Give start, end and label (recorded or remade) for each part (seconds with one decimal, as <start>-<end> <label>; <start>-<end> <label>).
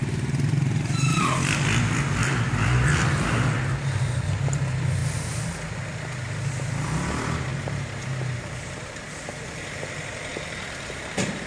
0.0-7.5 recorded; 7.5-9.1 remade; 9.1-10.3 recorded; 10.3-11.5 remade